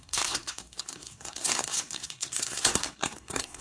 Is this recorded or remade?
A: remade